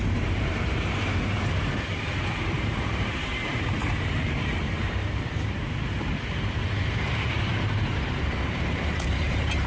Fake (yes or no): yes